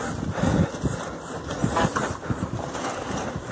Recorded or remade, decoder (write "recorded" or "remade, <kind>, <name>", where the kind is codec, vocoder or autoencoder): recorded